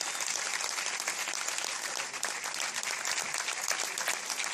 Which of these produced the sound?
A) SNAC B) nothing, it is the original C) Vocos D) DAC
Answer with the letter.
B